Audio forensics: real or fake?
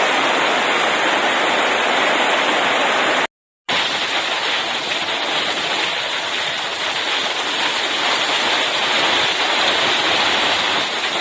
real